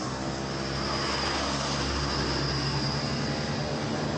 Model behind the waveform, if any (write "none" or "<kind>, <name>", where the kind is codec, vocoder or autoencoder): none